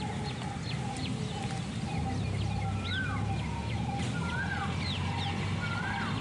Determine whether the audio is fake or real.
real